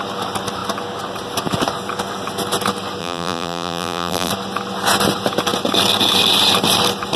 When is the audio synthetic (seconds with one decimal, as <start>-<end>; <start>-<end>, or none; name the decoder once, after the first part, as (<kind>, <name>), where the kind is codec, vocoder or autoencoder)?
3.0-4.3 (vocoder, BigVGAN v2)